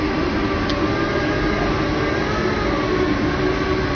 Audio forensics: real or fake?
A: real